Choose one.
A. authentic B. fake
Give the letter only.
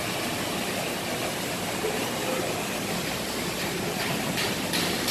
A